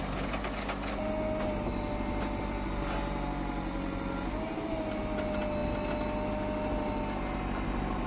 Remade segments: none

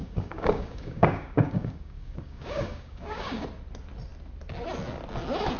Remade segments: 0.0-3.4

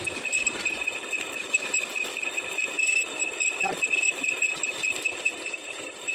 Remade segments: none

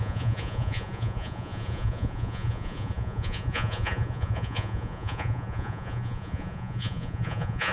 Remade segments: 0.0-7.7